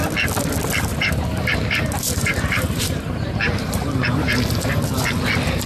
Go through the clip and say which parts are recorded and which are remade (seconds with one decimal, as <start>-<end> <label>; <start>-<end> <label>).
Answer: 0.0-0.9 recorded; 0.9-4.3 remade; 4.3-5.7 recorded